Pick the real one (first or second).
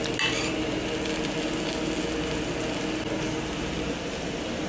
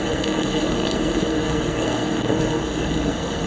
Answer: first